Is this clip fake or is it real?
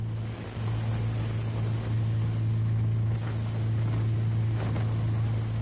real